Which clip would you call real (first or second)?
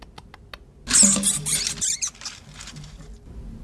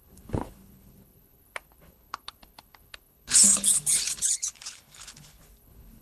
first